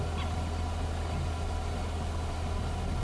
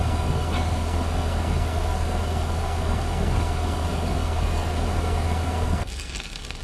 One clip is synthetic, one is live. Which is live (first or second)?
first